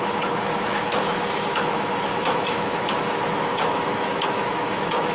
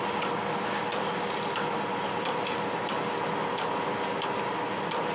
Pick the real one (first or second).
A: second